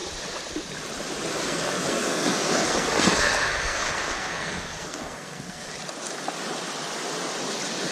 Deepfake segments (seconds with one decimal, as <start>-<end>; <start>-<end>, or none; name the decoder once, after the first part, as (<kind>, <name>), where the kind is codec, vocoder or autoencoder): 1.3-5.7 (codec, SNAC)

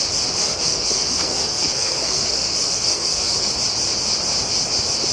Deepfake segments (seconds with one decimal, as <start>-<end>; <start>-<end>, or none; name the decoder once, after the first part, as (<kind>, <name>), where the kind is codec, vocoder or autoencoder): 0.4-3.5 (codec, SNAC)

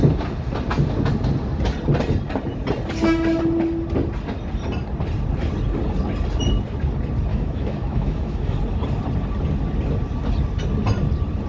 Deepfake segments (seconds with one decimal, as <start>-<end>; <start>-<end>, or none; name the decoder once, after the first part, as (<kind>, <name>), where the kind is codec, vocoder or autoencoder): 7.3-8.6 (autoencoder, DAC-VAE)

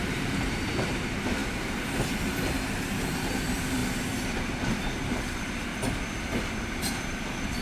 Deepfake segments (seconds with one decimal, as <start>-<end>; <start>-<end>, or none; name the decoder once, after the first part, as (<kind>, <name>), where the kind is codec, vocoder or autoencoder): 0.0-1.4 (vocoder, BigVGAN v2); 2.1-3.8; 4.3-5.7; 6.5-7.6